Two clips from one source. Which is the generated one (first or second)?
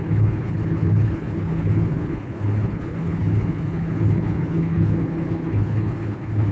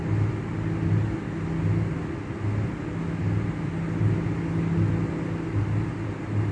first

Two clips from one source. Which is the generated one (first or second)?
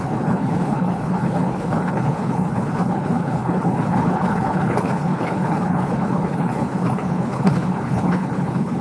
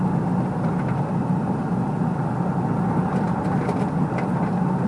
first